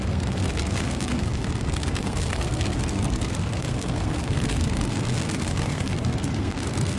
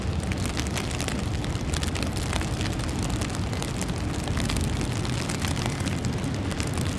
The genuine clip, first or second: second